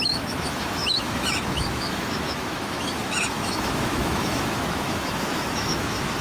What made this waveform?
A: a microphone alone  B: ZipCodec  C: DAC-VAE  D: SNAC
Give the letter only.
C